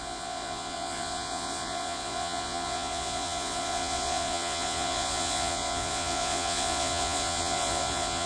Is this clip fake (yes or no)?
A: yes